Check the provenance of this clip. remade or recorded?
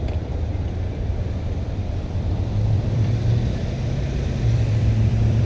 remade